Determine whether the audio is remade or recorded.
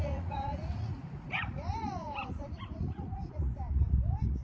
remade